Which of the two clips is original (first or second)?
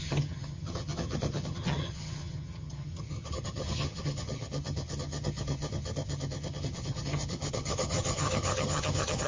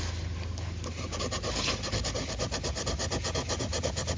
second